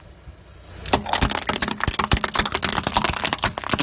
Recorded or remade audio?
recorded